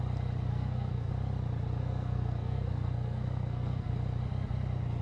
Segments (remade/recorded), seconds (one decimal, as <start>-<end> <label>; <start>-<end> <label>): 0.0-0.5 recorded; 0.5-1.1 remade; 1.1-1.8 recorded; 1.8-3.9 remade; 3.9-5.0 recorded